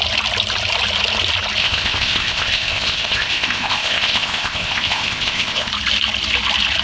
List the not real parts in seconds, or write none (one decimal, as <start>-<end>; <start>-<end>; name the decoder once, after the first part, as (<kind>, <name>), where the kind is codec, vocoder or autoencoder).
1.6-5.7 (codec, ZipCodec)